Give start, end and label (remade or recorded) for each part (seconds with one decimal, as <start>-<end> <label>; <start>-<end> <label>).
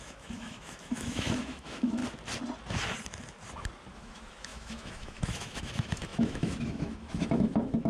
0.0-2.0 remade; 2.0-3.9 recorded; 3.9-7.9 remade